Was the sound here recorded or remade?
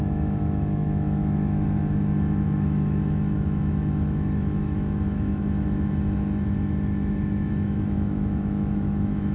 remade